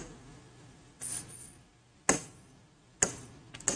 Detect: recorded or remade recorded